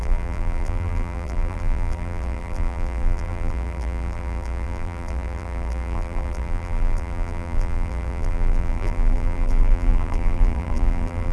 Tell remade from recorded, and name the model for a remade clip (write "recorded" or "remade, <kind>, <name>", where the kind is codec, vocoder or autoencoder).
remade, vocoder, BigVGAN v2